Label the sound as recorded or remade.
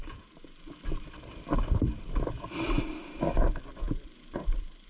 remade